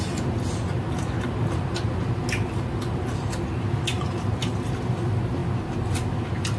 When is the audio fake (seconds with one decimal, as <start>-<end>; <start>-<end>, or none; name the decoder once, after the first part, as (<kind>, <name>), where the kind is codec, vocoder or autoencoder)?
none